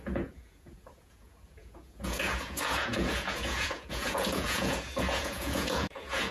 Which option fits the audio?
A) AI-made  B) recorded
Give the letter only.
A